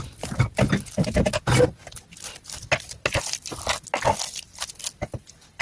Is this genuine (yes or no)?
yes